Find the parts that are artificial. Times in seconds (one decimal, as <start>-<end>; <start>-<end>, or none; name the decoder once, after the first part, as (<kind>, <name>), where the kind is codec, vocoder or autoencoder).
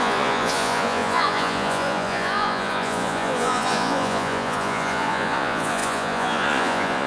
0.0-7.1 (vocoder, Vocos)